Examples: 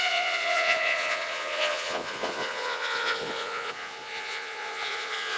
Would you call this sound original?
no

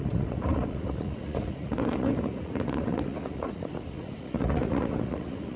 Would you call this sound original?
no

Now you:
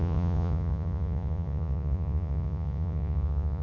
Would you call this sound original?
no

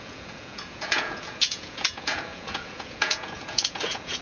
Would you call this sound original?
no